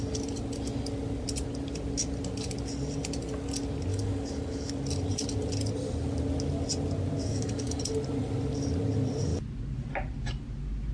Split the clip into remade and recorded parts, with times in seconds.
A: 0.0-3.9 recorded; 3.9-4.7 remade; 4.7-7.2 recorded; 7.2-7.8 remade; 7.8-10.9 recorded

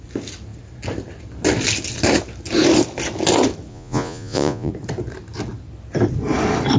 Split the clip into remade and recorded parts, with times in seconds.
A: 0.0-3.7 recorded; 3.7-4.7 remade; 4.7-6.8 recorded

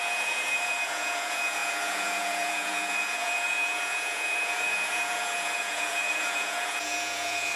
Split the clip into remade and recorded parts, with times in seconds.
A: 0.0-7.6 remade

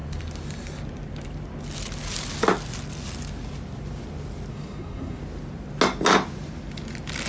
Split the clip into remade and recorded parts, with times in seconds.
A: 0.0-4.5 recorded; 4.5-5.2 remade; 5.2-7.3 recorded

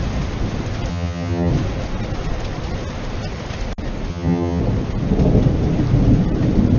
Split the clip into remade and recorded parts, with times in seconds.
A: 0.0-0.9 recorded; 0.9-1.5 remade; 1.5-4.1 recorded; 4.1-4.6 remade; 4.6-6.8 recorded

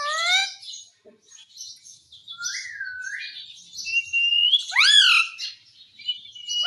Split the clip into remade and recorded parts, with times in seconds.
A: 0.0-4.3 recorded; 4.3-5.0 remade; 5.0-6.7 recorded